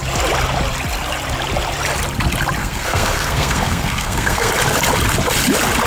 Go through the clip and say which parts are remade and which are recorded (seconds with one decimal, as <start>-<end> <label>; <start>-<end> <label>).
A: 0.0-2.6 recorded; 2.6-4.5 remade; 4.5-5.9 recorded